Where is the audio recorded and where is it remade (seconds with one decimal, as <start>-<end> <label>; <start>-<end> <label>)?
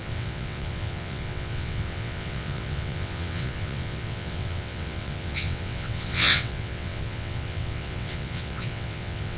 0.0-9.4 remade